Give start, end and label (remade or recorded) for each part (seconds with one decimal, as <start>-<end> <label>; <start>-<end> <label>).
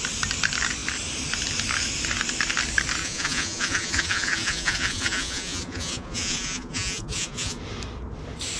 0.0-3.0 recorded; 3.0-7.6 remade; 7.6-8.6 recorded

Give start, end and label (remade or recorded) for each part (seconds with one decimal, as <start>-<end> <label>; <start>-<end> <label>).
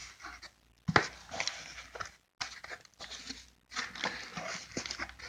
0.0-5.3 recorded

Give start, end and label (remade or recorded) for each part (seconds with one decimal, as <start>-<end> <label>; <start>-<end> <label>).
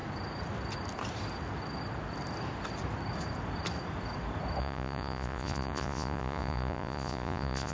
0.0-4.6 recorded; 4.6-7.7 remade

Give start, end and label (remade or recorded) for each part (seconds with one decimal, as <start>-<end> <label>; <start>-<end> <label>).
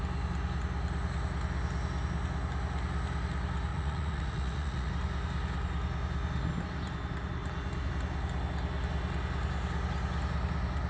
0.0-3.7 recorded; 3.7-4.9 remade; 4.9-10.9 recorded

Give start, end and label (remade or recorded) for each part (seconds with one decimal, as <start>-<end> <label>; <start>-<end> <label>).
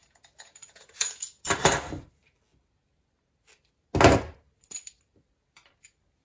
0.0-1.5 remade; 1.5-6.2 recorded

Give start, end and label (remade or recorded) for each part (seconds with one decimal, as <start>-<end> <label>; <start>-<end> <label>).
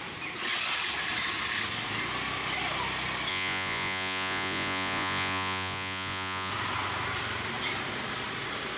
0.0-3.3 recorded; 3.3-6.5 remade; 6.5-8.8 recorded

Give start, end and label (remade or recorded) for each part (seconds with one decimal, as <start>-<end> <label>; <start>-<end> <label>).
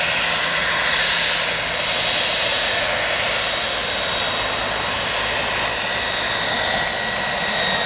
0.0-0.4 recorded; 0.4-1.1 remade; 1.1-2.5 recorded; 2.5-3.0 remade; 3.0-7.9 recorded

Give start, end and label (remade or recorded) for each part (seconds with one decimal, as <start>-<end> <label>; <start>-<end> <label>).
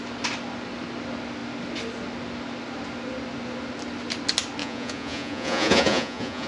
0.0-4.6 recorded; 4.6-6.5 remade